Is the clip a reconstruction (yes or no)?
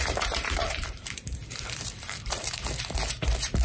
yes